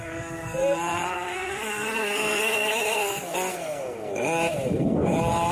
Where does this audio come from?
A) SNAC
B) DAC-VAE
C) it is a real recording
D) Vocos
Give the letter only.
A